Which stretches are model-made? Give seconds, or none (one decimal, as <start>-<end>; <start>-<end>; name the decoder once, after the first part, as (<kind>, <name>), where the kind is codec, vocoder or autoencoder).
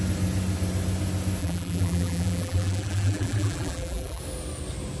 1.4-4.2 (vocoder, BigVGAN v2)